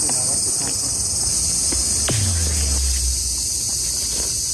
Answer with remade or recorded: recorded